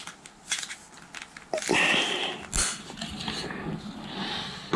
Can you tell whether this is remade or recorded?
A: recorded